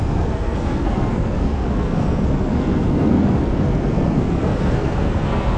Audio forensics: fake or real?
fake